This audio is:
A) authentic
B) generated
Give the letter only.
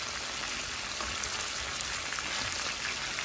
A